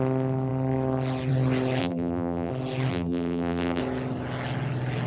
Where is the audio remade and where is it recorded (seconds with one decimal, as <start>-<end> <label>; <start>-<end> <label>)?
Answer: 0.0-1.8 recorded; 1.8-2.5 remade; 2.5-2.9 recorded; 2.9-3.8 remade; 3.8-5.1 recorded